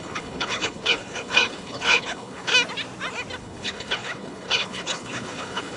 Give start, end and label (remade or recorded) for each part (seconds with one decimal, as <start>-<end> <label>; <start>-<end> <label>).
0.0-2.5 remade; 2.5-3.4 recorded; 3.4-5.8 remade